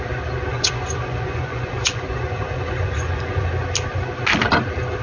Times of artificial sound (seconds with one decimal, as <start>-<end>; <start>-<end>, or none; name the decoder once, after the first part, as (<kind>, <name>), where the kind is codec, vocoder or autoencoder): 0.5-3.5 (vocoder, Vocos)